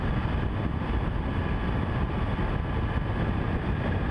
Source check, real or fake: real